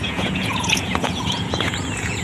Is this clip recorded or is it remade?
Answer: remade